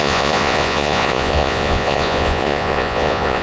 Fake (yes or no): yes